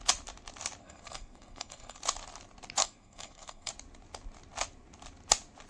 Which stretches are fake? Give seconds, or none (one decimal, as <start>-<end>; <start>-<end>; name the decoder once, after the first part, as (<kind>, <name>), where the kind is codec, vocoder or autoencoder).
0.8-2.0 (codec, SNAC); 2.8-3.7

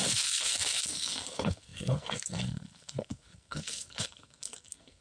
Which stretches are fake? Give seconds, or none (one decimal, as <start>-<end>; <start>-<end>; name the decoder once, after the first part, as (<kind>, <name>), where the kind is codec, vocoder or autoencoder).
0.0-5.0 (codec, SNAC)

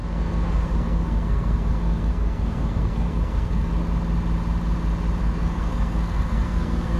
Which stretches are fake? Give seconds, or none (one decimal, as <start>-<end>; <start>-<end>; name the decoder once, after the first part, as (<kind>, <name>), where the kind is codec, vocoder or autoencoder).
0.0-3.7 (codec, SNAC); 5.2-7.0

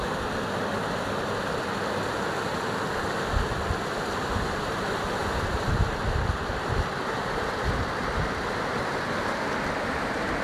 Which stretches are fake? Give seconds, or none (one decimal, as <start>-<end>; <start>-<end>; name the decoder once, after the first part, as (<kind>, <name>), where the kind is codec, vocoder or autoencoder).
none

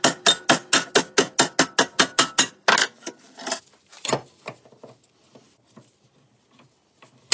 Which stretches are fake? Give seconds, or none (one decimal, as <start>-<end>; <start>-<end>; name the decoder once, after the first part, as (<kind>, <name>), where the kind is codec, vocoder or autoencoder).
none

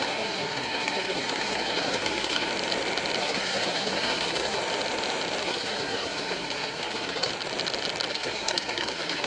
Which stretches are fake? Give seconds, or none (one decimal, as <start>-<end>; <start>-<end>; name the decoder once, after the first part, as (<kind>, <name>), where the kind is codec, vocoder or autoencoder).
0.0-2.5 (codec, SNAC); 3.2-4.6; 5.4-7.3; 8.1-9.3